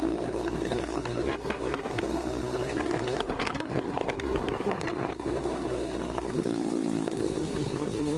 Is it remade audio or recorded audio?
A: remade